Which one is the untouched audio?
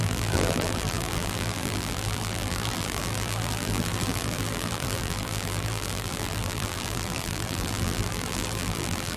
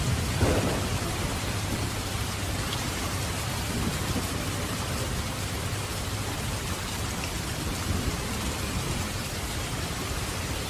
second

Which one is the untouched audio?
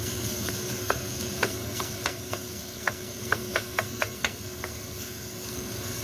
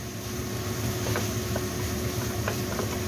second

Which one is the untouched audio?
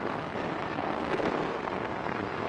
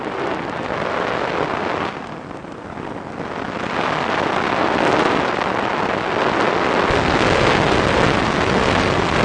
second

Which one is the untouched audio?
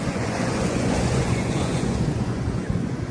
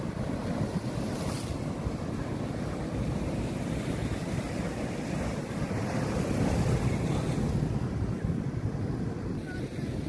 second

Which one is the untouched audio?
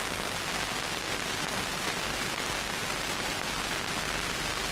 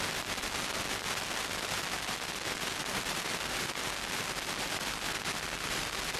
first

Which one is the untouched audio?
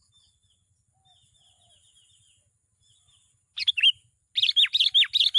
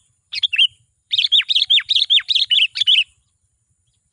first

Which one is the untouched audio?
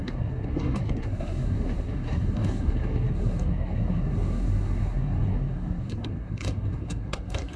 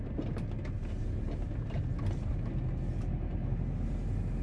second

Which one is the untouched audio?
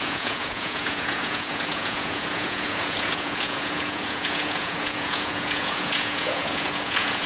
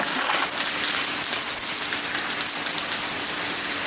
second